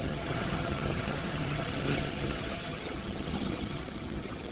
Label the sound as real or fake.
fake